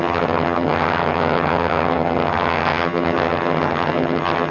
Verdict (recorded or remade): remade